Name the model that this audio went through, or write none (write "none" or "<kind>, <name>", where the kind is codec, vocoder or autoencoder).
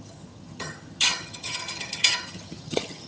vocoder, HiFi-GAN